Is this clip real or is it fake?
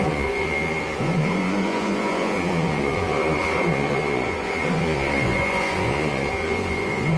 fake